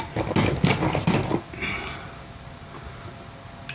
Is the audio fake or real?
real